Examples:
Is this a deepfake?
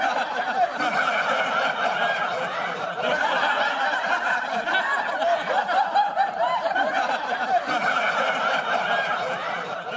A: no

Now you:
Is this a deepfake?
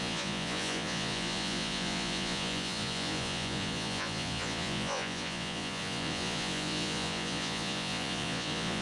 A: yes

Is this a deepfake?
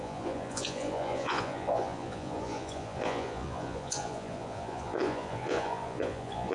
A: yes